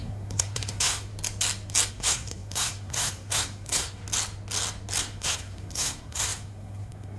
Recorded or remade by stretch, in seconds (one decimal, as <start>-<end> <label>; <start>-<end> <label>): 0.0-1.1 remade; 1.1-1.9 recorded; 1.9-4.0 remade; 4.0-5.0 recorded; 5.0-7.2 remade